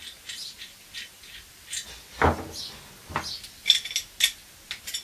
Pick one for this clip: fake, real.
real